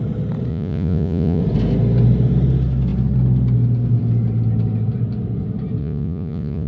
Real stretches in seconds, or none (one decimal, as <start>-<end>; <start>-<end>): 0.0-0.5; 1.4-5.8